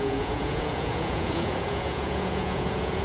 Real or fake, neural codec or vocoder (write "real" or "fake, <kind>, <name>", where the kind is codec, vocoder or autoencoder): fake, vocoder, Vocos